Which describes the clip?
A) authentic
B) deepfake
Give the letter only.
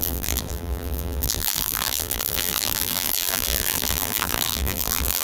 B